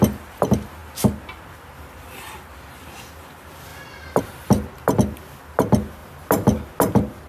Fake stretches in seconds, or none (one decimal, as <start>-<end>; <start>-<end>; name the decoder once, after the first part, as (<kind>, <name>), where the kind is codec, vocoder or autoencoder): 6.0-6.7 (vocoder, BigVGAN v2)